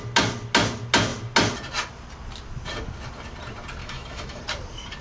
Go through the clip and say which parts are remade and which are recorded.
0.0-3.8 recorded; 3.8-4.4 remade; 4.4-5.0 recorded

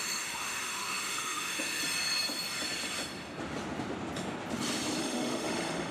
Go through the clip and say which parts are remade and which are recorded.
0.0-1.8 remade; 1.8-5.0 recorded; 5.0-5.9 remade